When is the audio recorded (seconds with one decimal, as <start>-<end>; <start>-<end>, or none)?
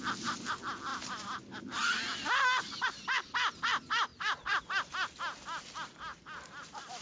0.0-0.9; 2.0-4.1; 4.7-6.1